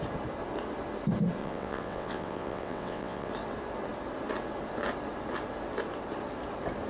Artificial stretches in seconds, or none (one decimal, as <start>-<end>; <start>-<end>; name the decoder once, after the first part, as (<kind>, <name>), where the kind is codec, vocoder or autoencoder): 1.4-3.3 (vocoder, WaveNeXt)